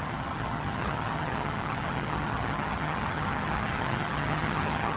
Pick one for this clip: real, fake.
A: fake